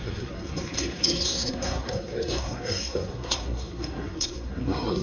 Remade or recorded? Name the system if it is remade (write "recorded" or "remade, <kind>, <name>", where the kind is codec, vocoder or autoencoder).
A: remade, codec, SNAC